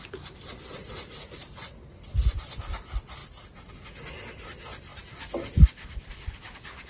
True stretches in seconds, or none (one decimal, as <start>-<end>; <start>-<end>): 0.0-6.9